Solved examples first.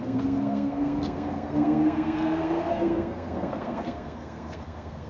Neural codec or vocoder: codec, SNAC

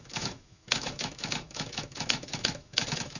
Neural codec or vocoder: autoencoder, DAC-VAE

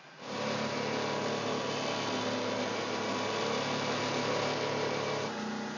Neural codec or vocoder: none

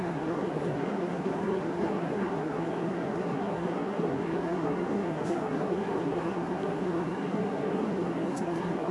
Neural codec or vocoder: codec, SNAC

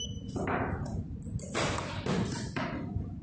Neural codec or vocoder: none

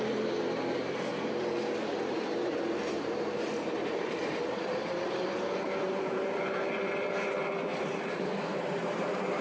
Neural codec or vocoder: vocoder, BigVGAN v2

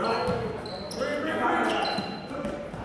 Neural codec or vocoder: none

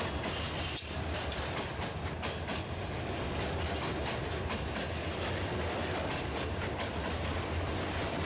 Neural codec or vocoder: none